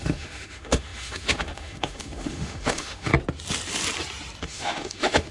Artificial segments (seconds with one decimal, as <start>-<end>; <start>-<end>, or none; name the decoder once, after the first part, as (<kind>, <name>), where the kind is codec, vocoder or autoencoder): 0.0-3.1 (autoencoder, DAC-VAE); 4.4-5.3